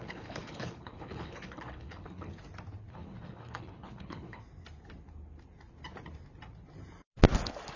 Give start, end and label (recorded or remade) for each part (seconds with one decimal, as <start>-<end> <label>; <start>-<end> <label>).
0.0-2.3 remade; 2.3-2.9 recorded; 2.9-4.4 remade; 4.4-7.8 recorded